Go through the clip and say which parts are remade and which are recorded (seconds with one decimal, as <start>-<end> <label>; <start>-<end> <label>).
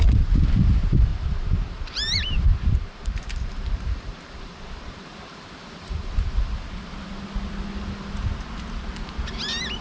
0.0-1.1 recorded; 1.1-1.9 remade; 1.9-2.5 recorded; 2.5-6.1 remade; 6.1-9.8 recorded